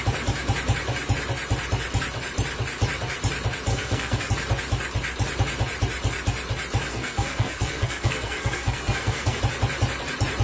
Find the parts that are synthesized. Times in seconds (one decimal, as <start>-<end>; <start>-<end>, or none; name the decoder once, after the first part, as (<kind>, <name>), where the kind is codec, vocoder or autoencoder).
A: 3.7-4.3 (codec, SNAC); 6.9-9.4